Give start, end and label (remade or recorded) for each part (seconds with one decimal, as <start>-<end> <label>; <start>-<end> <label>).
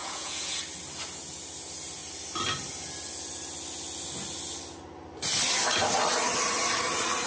0.0-0.6 remade; 0.6-7.3 recorded